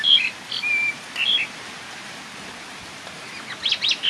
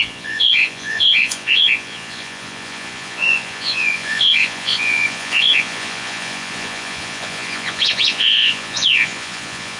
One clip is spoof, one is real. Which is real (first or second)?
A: first